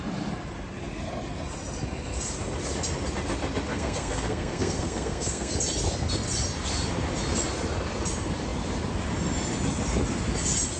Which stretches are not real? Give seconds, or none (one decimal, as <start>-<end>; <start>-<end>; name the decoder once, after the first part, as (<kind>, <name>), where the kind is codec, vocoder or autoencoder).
3.7-5.5 (codec, SNAC)